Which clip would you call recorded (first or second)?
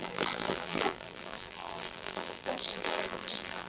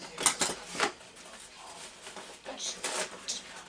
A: second